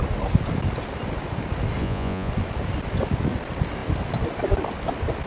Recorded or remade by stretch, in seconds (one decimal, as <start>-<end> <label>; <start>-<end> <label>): 0.0-1.8 recorded; 1.8-2.3 remade; 2.3-5.3 recorded